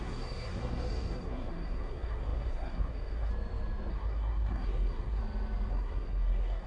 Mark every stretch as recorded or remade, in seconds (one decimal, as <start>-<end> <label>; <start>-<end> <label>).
0.0-3.3 remade; 3.3-3.9 recorded; 3.9-5.2 remade; 5.2-5.7 recorded; 5.7-6.7 remade